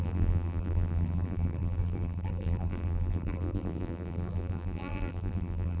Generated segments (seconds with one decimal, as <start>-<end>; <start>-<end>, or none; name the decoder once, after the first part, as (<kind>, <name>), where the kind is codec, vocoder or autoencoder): 0.0-5.8 (vocoder, BigVGAN v2)